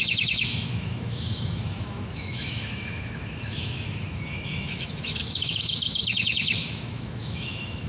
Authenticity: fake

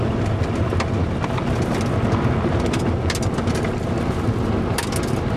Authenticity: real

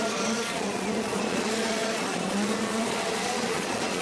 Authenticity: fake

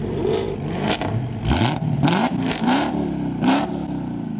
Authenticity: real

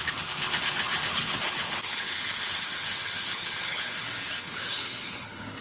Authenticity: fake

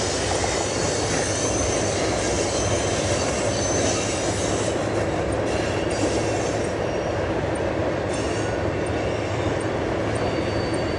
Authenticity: real